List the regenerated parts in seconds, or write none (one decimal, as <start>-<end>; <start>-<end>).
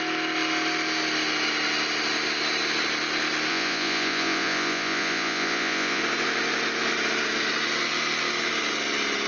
3.5-6.0